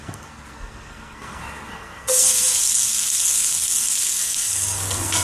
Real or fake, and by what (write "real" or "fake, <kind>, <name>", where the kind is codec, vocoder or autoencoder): fake, codec, SNAC